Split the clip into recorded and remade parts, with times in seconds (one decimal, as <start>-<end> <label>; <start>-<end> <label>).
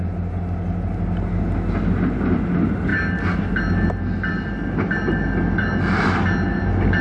0.0-7.0 recorded